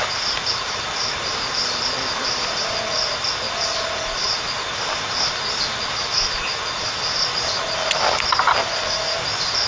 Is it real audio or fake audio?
fake